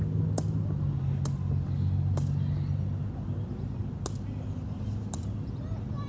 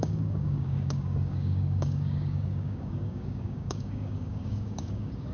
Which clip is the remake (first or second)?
second